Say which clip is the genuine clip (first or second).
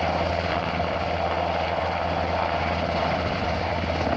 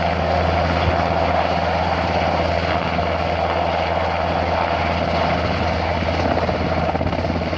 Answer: second